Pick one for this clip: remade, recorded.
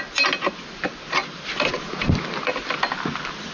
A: recorded